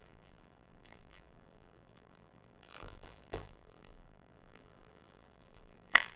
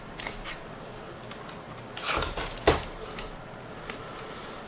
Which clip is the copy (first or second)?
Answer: first